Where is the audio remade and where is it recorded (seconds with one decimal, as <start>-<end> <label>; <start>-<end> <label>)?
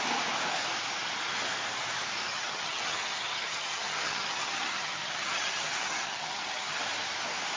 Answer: 0.0-2.3 recorded; 2.3-6.8 remade; 6.8-7.6 recorded